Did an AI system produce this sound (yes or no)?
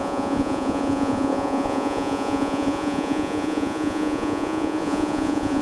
yes